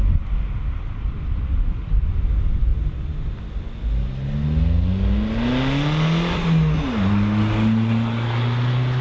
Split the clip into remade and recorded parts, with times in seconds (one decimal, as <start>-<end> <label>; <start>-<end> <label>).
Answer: 0.0-9.0 recorded